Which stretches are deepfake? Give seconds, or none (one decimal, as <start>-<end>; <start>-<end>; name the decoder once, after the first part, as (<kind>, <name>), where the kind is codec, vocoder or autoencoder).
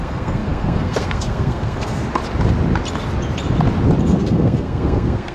0.0-2.0 (codec, SNAC); 4.0-5.3